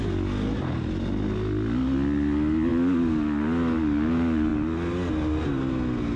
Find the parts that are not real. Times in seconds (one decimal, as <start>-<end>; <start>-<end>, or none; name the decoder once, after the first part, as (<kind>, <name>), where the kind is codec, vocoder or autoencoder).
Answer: none